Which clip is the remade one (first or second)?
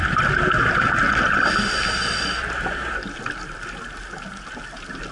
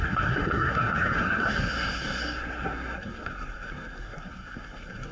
second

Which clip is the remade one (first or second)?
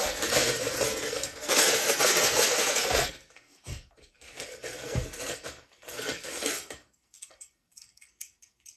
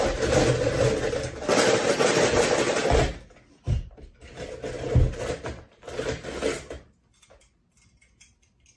first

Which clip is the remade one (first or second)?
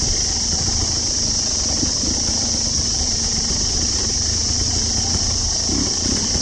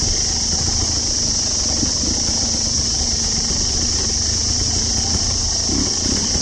first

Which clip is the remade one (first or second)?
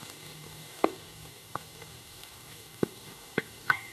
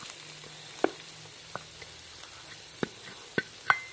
first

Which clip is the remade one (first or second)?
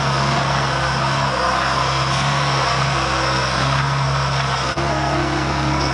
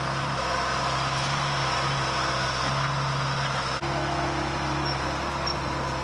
first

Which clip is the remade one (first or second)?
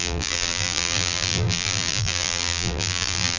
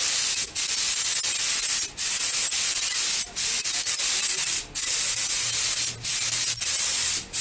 first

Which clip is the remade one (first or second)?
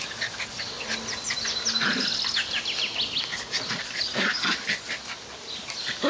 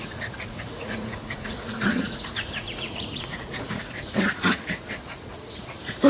second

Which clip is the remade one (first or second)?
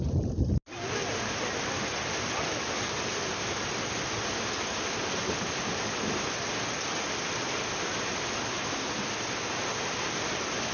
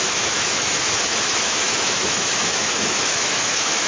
second